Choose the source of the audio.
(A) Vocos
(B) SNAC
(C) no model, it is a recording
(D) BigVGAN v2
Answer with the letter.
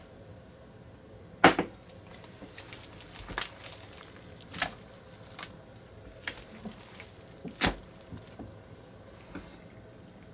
C